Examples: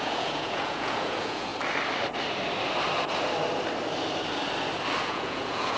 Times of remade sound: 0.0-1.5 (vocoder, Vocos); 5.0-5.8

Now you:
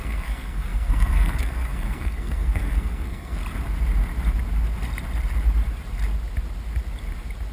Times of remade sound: 0.0-3.4 (codec, SNAC)